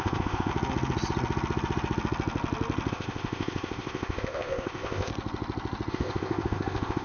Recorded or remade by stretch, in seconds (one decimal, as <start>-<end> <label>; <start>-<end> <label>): 0.0-0.5 remade; 0.5-2.9 recorded; 2.9-5.1 remade; 5.1-5.9 recorded; 5.9-7.0 remade